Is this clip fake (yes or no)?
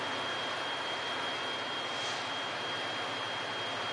no